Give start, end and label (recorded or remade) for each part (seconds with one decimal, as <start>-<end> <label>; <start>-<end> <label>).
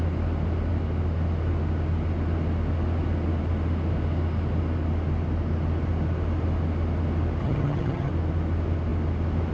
0.0-7.4 recorded; 7.4-8.1 remade; 8.1-9.5 recorded